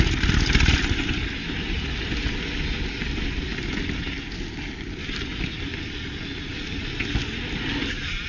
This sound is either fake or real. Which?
real